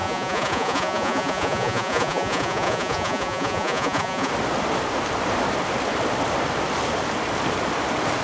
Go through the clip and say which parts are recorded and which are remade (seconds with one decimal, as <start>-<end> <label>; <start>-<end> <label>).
0.0-4.3 remade; 4.3-8.2 recorded